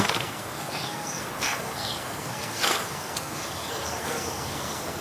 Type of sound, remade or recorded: remade